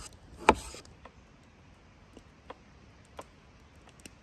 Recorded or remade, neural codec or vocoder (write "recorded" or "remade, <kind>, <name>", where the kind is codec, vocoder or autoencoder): recorded